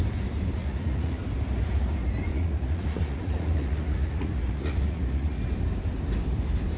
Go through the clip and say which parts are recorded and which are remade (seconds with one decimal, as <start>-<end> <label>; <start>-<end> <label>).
0.0-0.6 recorded; 0.6-1.2 remade; 1.2-2.3 recorded; 2.3-5.4 remade; 5.4-6.8 recorded